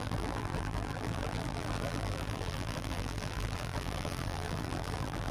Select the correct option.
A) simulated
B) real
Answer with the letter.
A